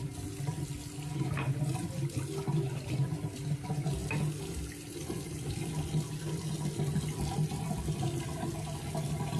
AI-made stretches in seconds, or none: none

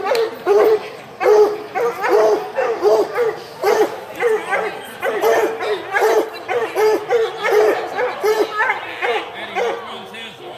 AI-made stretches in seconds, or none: 0.0-7.0

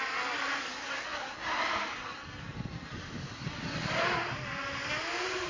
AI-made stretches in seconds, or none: 1.1-3.8

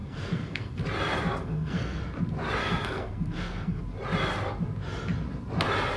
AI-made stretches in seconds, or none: 0.0-0.8; 1.4-2.0; 2.6-3.8

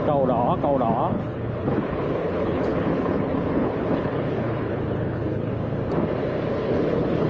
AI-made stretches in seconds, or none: 1.1-5.5; 6.5-7.3